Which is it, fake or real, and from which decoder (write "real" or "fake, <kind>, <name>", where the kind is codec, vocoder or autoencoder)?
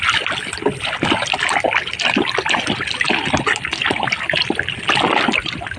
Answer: real